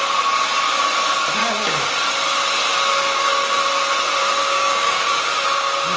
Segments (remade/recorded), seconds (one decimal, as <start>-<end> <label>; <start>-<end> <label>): 0.0-1.4 recorded; 1.4-1.9 remade; 1.9-2.7 recorded; 2.7-3.3 remade; 3.3-4.2 recorded; 4.2-5.2 remade; 5.2-6.0 recorded